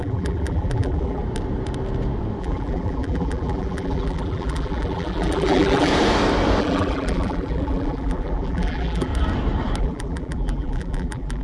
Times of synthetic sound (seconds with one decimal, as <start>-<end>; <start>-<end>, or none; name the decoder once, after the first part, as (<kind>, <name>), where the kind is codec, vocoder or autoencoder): 0.0-1.2 (vocoder, BigVGAN v2); 2.4-5.9; 6.6-9.1; 9.8-11.4